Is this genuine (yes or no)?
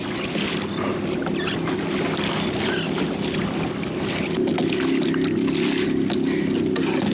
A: yes